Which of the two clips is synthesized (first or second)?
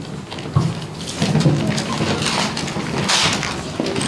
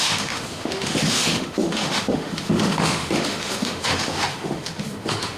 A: second